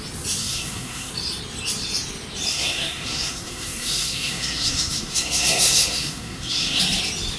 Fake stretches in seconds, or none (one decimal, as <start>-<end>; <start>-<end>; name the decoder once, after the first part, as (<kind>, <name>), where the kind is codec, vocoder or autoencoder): 0.4-1.1 (codec, SNAC); 2.5-6.8